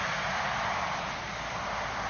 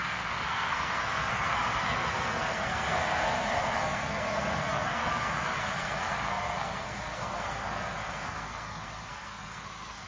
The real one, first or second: first